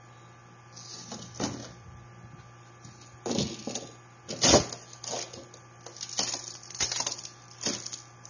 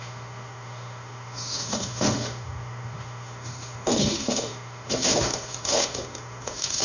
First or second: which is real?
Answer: first